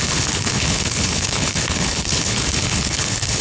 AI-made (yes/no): yes